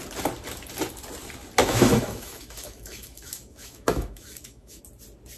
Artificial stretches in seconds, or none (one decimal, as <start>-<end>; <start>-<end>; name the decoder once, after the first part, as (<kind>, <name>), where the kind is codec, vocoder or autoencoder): 1.6-4.8 (autoencoder, DAC-VAE)